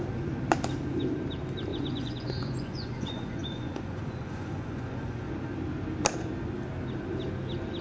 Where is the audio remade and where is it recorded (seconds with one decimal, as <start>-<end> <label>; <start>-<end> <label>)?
0.0-1.7 recorded; 1.7-5.3 remade; 5.3-7.8 recorded